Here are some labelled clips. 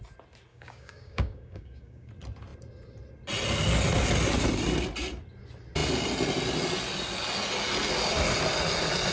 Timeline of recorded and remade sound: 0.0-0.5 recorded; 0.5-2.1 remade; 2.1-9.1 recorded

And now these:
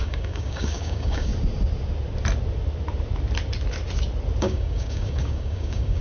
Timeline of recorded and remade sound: 0.0-1.3 remade; 1.3-4.4 recorded; 4.4-6.0 remade

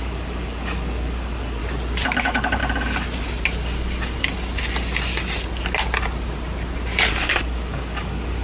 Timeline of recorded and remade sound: 0.0-1.6 remade; 1.6-2.2 recorded; 2.2-2.6 remade; 2.6-7.1 recorded; 7.1-8.4 remade